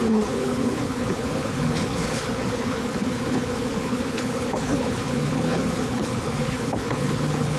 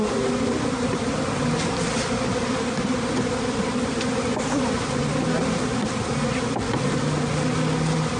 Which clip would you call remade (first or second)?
first